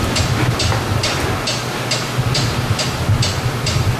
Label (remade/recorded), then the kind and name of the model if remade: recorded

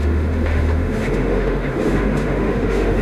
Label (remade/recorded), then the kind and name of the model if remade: remade, autoencoder, DAC-VAE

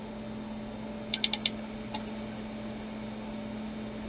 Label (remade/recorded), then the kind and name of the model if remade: recorded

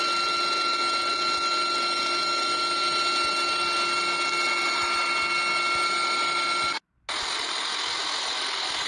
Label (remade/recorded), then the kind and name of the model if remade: recorded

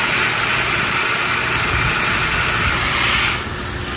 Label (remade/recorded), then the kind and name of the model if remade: recorded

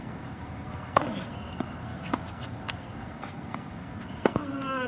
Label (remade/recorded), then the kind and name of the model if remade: remade, codec, SNAC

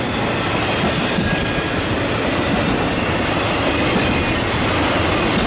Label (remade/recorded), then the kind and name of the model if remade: recorded